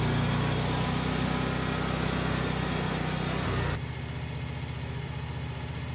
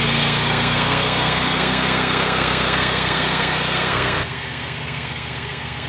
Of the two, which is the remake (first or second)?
second